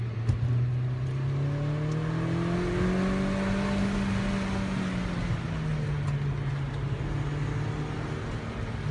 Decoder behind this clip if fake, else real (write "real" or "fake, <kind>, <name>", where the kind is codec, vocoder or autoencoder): real